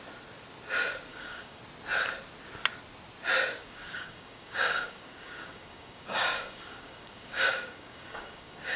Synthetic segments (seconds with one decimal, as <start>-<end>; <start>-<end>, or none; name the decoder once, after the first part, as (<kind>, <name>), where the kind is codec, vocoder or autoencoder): 1.1-1.6 (codec, DAC); 3.6-8.8